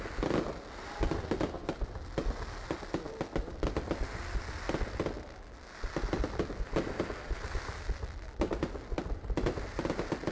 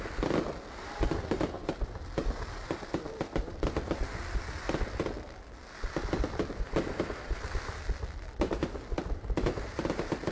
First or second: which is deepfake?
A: second